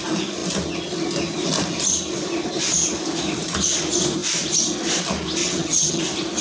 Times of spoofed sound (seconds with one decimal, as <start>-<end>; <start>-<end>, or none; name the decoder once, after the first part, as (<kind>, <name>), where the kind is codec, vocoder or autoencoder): 5.4-6.0 (vocoder, HiFi-GAN)